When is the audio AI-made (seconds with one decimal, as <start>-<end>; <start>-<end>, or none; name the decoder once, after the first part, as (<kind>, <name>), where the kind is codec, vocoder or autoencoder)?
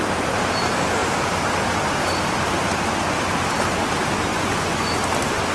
4.3-4.9 (vocoder, Vocos)